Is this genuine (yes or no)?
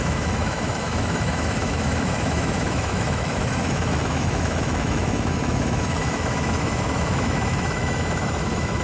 no